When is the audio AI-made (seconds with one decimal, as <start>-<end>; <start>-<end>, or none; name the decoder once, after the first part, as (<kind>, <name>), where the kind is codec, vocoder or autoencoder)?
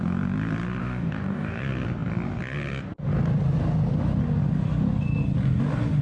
0.8-1.6 (codec, DAC)